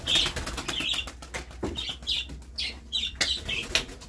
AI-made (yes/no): no